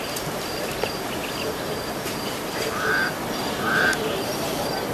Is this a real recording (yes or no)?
yes